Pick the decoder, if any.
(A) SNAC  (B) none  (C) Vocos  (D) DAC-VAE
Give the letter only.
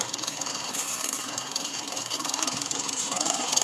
A